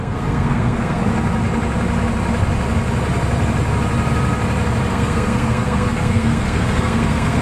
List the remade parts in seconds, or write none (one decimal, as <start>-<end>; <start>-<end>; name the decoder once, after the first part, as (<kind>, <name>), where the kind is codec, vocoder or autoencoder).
0.0-1.0 (codec, SNAC); 4.9-7.4